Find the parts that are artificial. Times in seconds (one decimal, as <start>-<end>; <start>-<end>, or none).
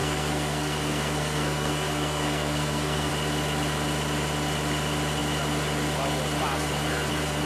0.0-3.1